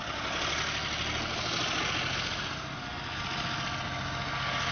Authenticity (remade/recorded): recorded